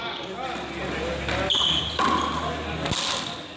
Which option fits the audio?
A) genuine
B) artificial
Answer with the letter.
A